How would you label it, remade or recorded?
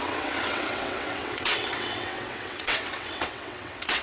remade